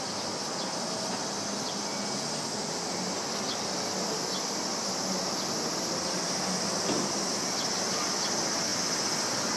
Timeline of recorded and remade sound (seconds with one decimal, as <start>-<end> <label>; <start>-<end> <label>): 0.0-9.6 recorded